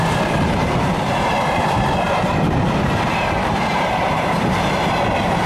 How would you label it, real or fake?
fake